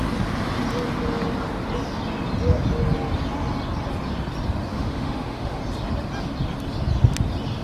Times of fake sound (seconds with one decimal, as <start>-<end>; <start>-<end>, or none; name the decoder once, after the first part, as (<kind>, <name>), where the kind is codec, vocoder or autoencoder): 4.7-5.6 (autoencoder, DAC-VAE)